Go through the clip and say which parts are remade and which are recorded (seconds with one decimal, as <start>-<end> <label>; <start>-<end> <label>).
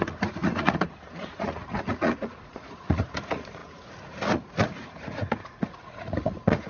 0.0-6.7 remade